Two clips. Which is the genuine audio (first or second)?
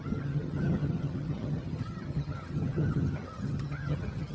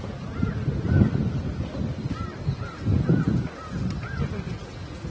second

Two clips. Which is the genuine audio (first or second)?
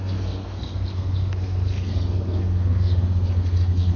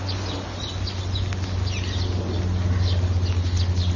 second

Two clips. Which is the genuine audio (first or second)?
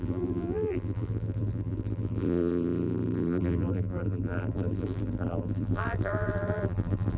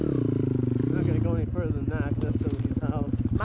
second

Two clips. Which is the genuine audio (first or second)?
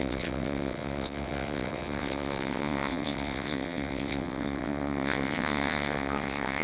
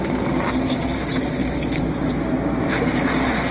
second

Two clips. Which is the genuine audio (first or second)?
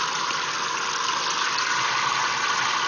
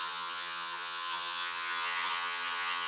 first